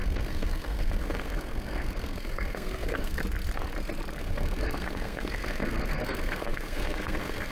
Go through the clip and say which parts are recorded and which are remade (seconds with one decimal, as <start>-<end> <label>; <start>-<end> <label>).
0.0-3.2 remade; 3.2-4.2 recorded; 4.2-7.5 remade